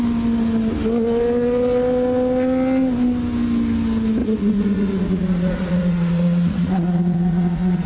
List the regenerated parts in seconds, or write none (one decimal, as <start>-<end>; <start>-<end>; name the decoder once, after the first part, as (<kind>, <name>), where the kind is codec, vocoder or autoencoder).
4.2-7.9 (vocoder, Vocos)